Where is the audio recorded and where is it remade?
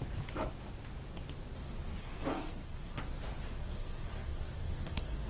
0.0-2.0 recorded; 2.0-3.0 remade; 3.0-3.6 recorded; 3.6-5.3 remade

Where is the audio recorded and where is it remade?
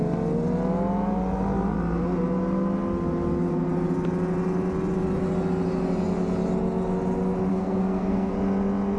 0.0-7.5 recorded; 7.5-8.3 remade; 8.3-9.0 recorded